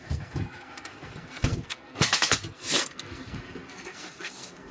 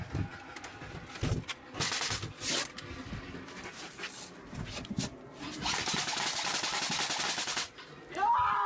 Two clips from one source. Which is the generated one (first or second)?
first